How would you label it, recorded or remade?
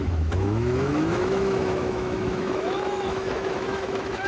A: remade